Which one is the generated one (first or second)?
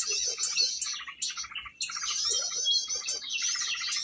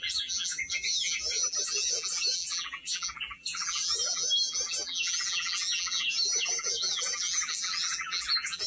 second